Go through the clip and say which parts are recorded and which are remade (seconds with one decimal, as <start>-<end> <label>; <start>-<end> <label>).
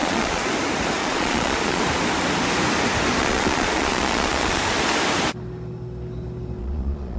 0.0-0.5 remade; 0.5-1.0 recorded; 1.0-1.8 remade; 1.8-3.2 recorded; 3.2-4.6 remade; 4.6-6.6 recorded; 6.6-7.2 remade